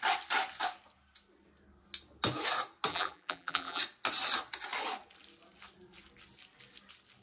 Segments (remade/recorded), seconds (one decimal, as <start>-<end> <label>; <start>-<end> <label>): 0.0-2.9 recorded; 2.9-3.8 remade; 3.8-7.2 recorded